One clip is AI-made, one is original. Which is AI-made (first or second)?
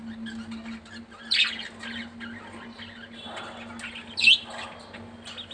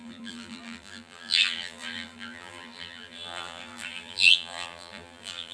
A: second